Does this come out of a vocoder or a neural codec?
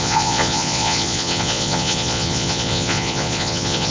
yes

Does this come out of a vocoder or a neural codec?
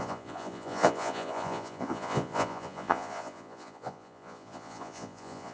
yes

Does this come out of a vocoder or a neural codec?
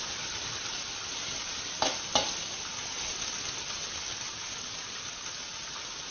no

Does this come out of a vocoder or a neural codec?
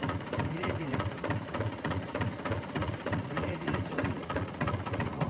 yes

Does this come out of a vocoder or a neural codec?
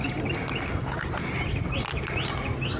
no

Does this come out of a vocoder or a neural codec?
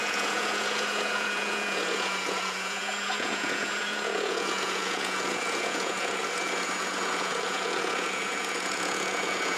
yes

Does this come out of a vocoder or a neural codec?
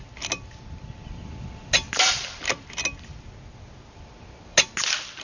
no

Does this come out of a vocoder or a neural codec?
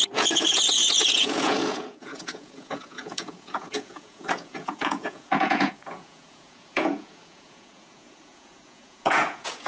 yes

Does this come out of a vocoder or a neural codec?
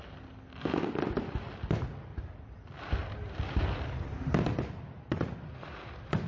no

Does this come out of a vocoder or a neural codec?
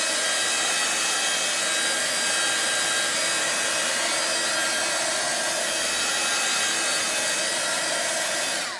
no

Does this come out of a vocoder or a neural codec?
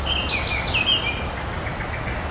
no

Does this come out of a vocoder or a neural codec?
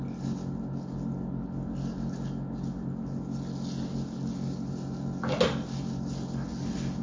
no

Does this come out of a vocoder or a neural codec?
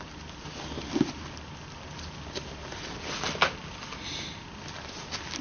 no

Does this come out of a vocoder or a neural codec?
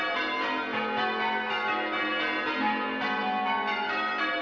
no